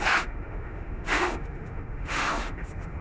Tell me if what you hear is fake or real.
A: fake